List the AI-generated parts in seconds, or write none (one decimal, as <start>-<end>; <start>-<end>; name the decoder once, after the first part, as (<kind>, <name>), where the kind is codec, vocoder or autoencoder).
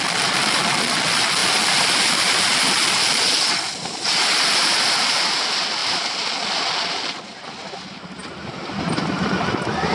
none